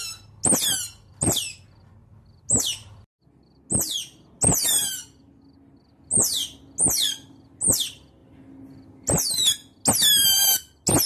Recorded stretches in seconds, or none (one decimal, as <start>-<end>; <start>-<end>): 0.0-11.1